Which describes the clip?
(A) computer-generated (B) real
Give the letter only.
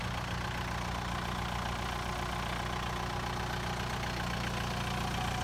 B